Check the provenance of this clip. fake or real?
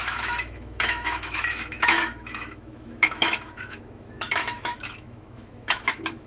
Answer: fake